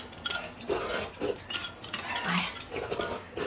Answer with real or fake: real